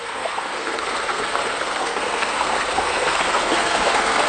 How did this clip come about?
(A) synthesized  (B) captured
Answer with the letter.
A